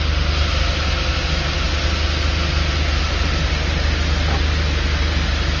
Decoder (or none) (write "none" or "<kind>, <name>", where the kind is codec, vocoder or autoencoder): none